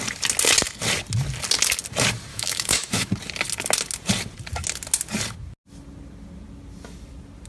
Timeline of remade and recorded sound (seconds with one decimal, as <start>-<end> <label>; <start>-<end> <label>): 0.0-2.3 recorded; 2.3-3.1 remade; 3.1-7.5 recorded